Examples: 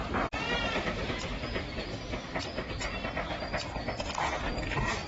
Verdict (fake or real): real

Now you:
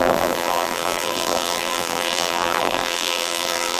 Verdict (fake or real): fake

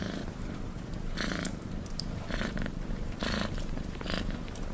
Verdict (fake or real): fake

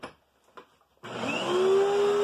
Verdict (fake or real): real